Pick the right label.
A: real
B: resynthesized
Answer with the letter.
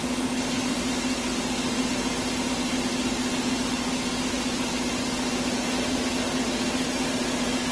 A